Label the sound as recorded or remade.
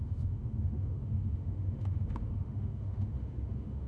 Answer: remade